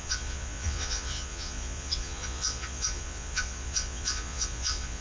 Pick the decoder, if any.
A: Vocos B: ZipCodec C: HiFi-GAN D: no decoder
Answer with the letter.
A